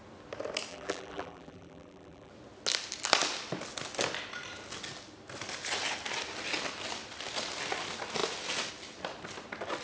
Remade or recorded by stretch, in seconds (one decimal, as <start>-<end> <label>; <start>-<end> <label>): 0.0-0.7 recorded; 0.7-2.3 remade; 2.3-9.8 recorded